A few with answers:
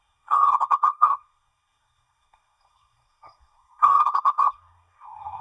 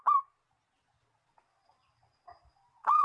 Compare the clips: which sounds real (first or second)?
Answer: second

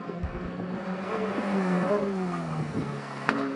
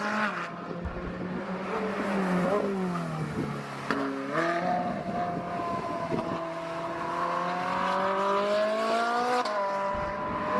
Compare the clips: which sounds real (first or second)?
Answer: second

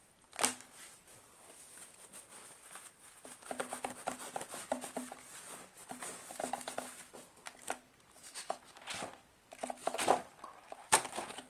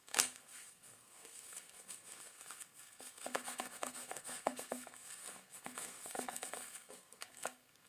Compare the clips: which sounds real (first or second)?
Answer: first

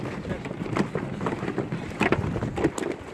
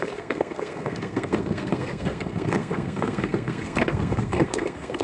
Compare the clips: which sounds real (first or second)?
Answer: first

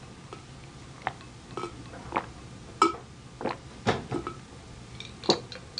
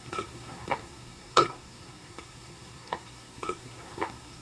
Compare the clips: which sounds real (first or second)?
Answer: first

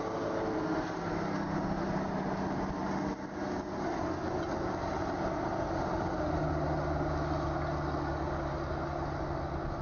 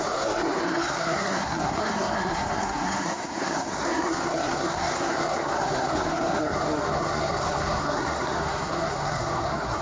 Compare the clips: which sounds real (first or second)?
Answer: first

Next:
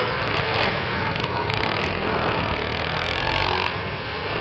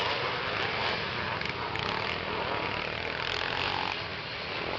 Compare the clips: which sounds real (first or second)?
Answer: second